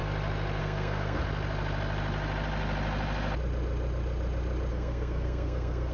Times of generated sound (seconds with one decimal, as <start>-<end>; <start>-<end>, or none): 0.6-1.2; 4.7-5.9